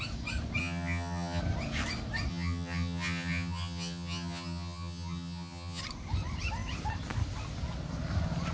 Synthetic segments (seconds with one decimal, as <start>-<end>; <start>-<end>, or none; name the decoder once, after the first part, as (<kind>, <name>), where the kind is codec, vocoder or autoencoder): 0.6-1.4 (vocoder, HiFi-GAN); 2.3-5.8